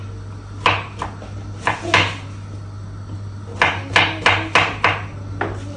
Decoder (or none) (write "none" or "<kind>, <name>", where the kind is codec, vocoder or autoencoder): none